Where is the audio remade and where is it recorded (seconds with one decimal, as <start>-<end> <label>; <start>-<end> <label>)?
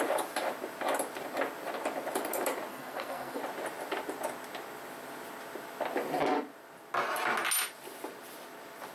0.0-2.7 recorded; 2.7-3.4 remade; 3.4-8.9 recorded